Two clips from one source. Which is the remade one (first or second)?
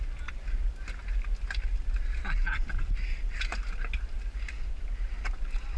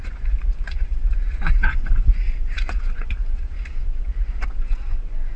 second